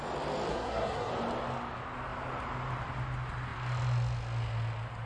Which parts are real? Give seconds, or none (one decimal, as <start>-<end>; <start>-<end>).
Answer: 0.0-0.5; 1.1-5.1